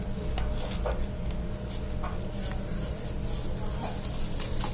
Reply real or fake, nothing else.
real